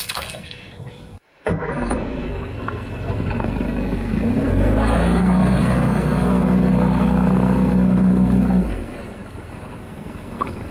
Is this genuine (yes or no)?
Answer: no